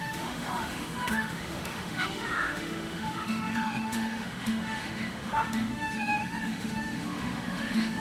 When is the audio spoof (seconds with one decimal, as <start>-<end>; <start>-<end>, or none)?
0.0-8.0

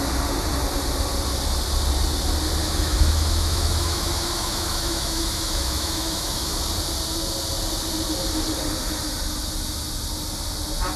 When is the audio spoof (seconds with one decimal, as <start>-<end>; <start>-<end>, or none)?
2.6-6.6